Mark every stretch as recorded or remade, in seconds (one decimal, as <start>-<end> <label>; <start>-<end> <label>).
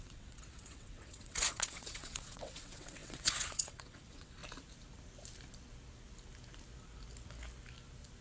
0.0-4.4 remade; 4.4-8.2 recorded